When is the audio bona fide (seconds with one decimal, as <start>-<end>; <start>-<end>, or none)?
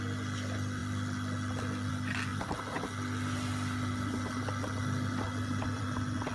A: 0.0-6.3